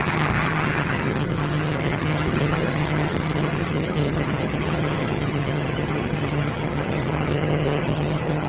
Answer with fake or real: fake